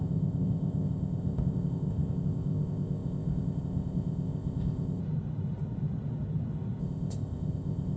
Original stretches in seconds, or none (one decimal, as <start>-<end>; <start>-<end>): 5.0-6.8